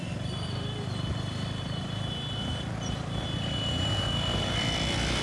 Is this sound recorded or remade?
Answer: remade